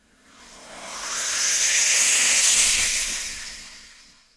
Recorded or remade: remade